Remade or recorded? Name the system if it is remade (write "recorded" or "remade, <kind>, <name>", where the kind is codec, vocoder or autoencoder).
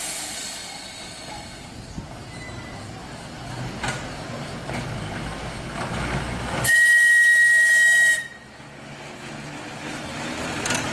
recorded